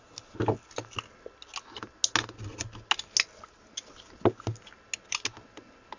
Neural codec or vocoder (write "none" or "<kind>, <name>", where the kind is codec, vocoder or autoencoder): none